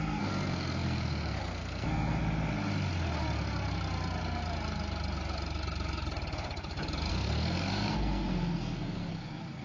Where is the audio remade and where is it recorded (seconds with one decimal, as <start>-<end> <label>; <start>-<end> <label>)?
0.0-2.2 remade; 2.2-7.1 recorded; 7.1-9.6 remade